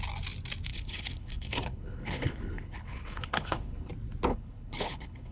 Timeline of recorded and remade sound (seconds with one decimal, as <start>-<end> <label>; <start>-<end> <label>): 0.0-0.7 recorded; 0.7-3.9 remade; 3.9-4.3 recorded; 4.3-5.3 remade